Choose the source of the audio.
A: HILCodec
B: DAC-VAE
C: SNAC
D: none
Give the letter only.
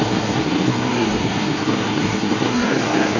C